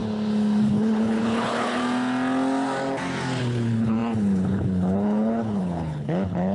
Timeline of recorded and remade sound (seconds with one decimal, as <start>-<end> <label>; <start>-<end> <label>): 0.0-0.7 recorded; 0.7-1.8 remade; 1.8-3.4 recorded; 3.4-6.5 remade

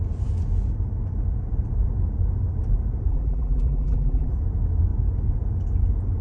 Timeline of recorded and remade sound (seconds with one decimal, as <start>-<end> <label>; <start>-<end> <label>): 0.0-3.1 recorded; 3.1-4.3 remade; 4.3-6.2 recorded